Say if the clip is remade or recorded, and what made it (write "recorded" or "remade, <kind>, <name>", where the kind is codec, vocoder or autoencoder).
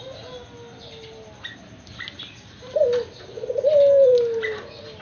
recorded